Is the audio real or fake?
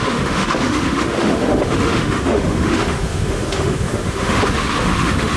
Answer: fake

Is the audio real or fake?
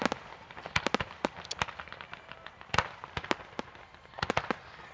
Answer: real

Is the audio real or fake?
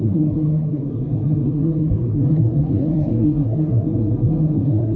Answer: fake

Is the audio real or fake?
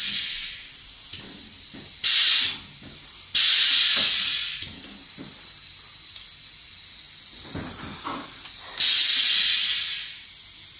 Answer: real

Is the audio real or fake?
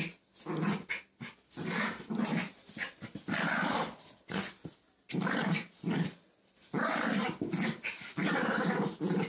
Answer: real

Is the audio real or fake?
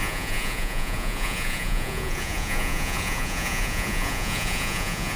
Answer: fake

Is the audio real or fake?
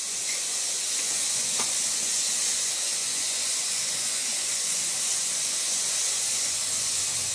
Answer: fake